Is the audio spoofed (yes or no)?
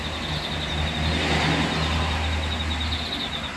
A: no